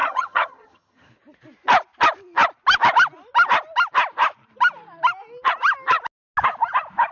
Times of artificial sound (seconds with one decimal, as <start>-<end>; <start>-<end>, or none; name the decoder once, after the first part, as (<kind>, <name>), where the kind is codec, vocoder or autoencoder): 0.0-1.1 (vocoder, HiFi-GAN)